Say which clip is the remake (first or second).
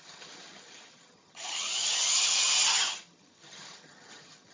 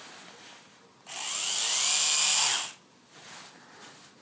first